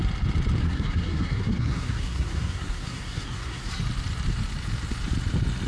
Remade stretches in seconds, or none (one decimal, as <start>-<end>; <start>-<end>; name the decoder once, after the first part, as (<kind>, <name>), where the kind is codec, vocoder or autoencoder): 0.6-3.7 (codec, SNAC)